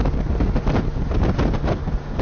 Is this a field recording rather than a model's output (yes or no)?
yes